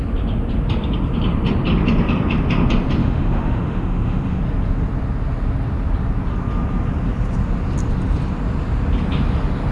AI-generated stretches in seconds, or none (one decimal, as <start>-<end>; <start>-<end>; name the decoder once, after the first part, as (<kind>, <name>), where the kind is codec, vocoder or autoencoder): 3.0-4.4 (autoencoder, DAC-VAE)